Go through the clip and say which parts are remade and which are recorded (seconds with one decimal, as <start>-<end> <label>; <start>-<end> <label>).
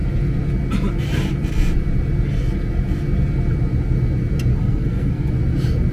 0.0-4.5 recorded; 4.5-5.3 remade; 5.3-5.9 recorded